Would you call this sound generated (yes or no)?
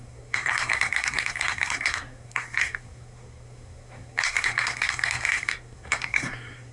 yes